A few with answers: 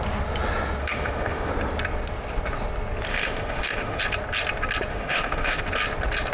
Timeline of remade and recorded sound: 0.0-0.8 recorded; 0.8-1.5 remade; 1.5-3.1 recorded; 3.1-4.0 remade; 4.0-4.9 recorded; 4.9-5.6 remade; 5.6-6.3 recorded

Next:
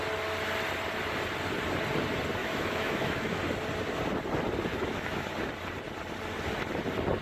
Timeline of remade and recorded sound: 0.0-2.4 recorded; 2.4-3.4 remade; 3.4-4.7 recorded; 4.7-5.3 remade; 5.3-7.2 recorded

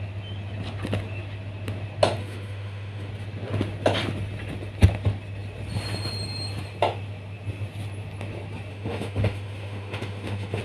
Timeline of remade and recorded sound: 0.0-2.2 recorded; 2.2-3.1 remade; 3.1-8.7 recorded; 8.7-10.6 remade

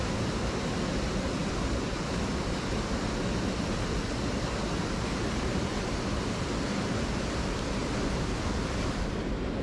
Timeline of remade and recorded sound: 0.0-9.6 recorded

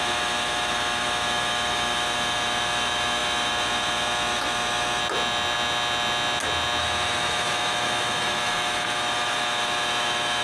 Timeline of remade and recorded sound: 0.0-5.0 remade; 5.0-6.8 recorded; 6.8-10.4 remade